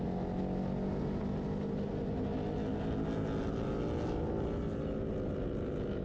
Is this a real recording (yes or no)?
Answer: yes